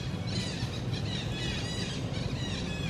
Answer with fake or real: real